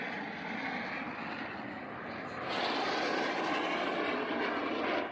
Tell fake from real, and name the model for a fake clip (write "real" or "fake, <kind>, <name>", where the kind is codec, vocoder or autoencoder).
real